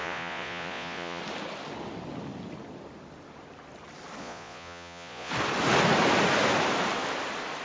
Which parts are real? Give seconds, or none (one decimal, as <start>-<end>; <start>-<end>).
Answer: 1.2-4.2; 5.3-7.6